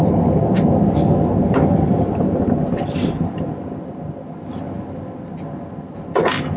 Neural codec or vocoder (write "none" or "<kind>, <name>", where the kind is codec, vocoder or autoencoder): none